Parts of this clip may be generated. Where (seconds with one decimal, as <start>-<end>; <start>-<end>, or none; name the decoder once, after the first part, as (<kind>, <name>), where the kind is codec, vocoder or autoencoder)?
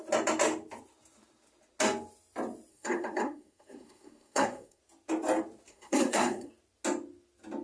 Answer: 2.7-4.8 (codec, SNAC); 5.7-6.5